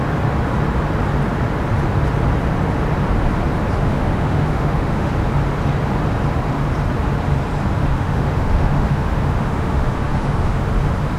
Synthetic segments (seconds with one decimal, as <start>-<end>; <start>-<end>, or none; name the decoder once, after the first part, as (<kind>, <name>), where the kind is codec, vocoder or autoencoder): 3.8-5.1 (autoencoder, DAC-VAE); 7.8-10.7